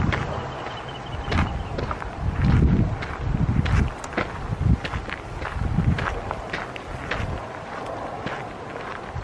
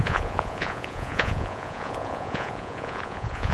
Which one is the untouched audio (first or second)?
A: first